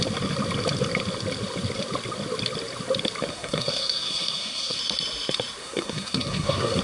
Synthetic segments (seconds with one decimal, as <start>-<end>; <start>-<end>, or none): 3.3-4.8; 5.6-6.8